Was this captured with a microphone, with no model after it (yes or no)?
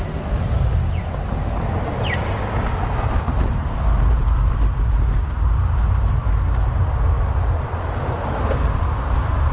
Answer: yes